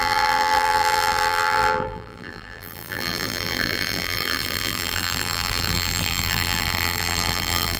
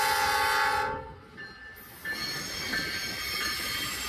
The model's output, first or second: first